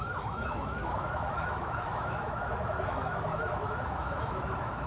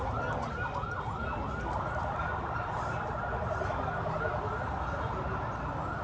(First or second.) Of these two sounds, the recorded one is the second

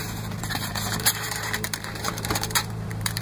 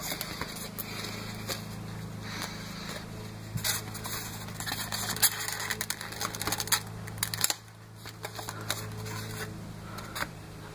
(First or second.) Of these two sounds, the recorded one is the second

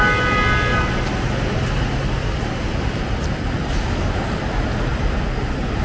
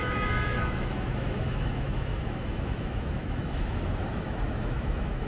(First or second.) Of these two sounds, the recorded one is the first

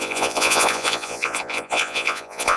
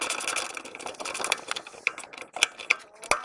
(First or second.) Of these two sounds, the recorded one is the second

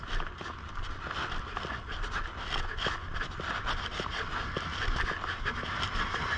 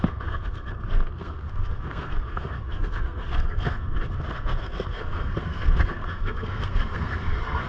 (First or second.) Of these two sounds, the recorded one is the first